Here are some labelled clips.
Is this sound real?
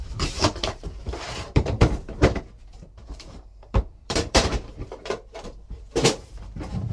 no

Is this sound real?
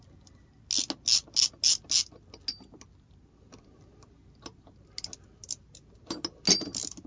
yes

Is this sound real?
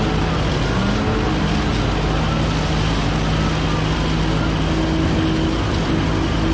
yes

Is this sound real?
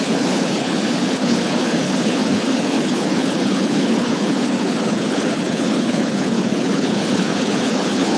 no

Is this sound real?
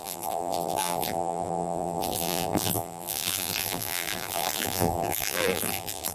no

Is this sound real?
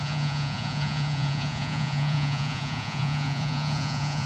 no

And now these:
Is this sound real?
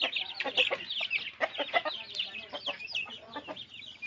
yes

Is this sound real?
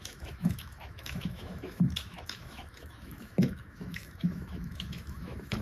no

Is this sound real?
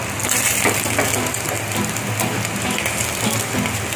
yes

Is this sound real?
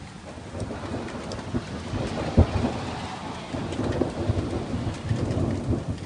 yes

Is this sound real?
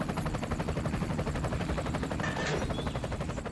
no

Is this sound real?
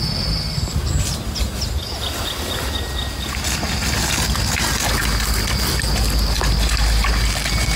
yes